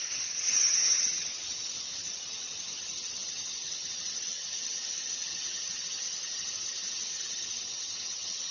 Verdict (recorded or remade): remade